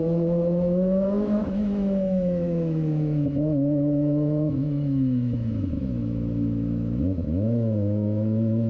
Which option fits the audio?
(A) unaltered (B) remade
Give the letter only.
B